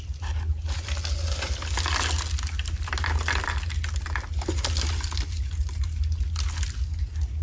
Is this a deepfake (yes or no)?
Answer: no